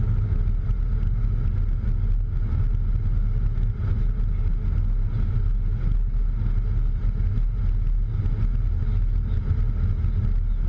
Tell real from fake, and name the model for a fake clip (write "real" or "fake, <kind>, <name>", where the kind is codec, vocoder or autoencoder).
real